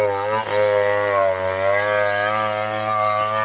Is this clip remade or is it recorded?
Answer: recorded